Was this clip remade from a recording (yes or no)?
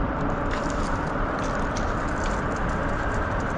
yes